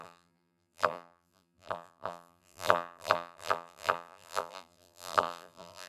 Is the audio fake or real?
fake